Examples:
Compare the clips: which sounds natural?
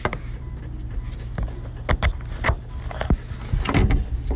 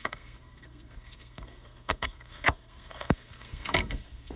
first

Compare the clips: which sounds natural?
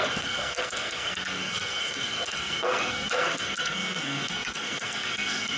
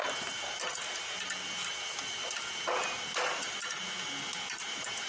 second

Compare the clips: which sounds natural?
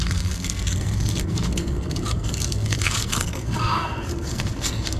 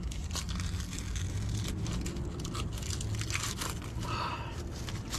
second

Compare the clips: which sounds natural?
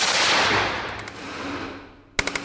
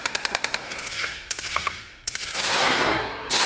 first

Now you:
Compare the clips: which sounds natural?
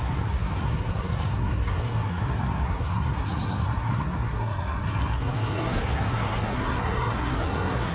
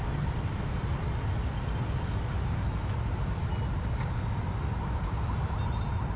second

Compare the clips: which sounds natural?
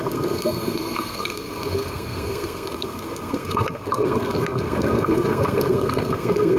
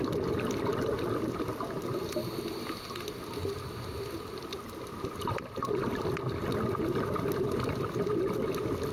second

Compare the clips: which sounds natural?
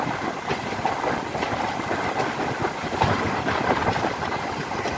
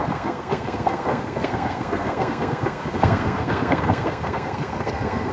first